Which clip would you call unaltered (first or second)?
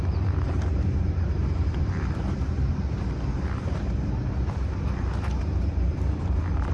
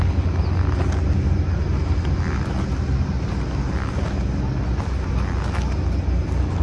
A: second